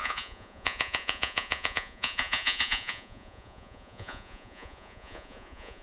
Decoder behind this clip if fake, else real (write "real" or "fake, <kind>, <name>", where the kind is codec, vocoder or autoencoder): fake, vocoder, Vocos